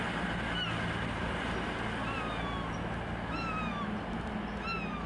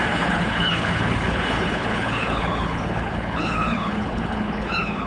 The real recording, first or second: first